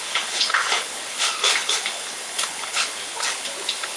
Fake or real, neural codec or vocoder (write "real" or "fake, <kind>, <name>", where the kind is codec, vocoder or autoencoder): fake, codec, HILCodec